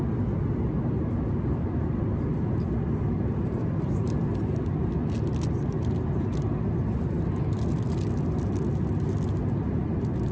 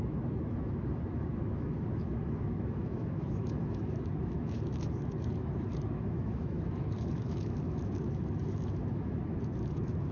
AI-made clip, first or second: second